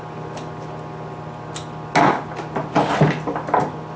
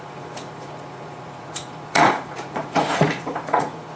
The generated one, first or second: second